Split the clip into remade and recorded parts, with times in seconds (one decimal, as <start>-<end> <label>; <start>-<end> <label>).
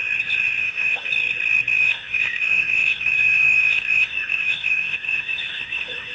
0.0-0.6 recorded; 0.6-1.1 remade; 1.1-1.8 recorded; 1.8-6.1 remade